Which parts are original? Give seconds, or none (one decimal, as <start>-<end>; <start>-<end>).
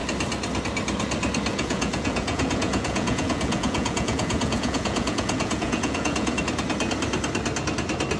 0.0-1.5; 6.4-8.2